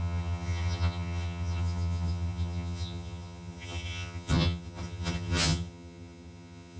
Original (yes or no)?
no